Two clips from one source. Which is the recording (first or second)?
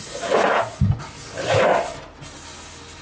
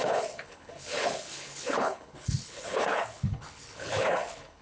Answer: first